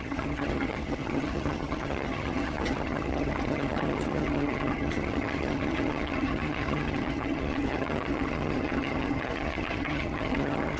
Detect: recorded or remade remade